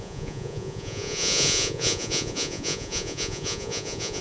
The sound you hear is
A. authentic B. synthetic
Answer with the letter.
B